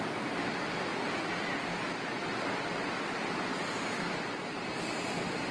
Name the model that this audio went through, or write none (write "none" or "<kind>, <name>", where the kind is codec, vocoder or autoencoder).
none